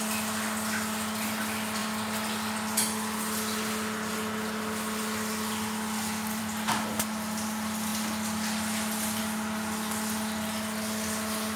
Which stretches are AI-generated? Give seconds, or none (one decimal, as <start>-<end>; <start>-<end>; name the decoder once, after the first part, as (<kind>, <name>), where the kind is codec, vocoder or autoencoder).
none